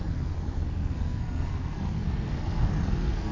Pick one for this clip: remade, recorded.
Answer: remade